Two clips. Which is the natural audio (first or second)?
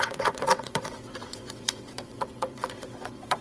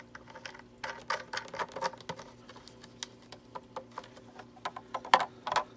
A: second